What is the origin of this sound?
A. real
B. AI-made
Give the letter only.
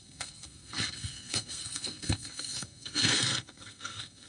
B